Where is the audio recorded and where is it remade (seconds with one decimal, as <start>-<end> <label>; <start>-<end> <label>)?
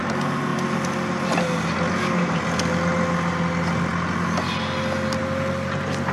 0.0-6.1 recorded